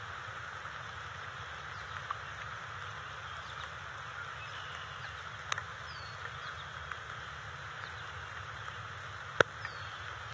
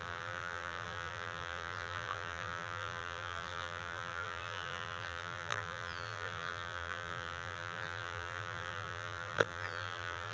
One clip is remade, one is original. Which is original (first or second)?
first